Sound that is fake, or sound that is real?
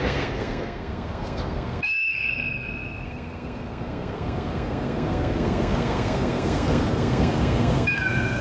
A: fake